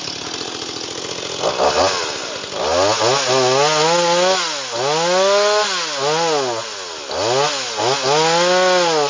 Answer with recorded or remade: recorded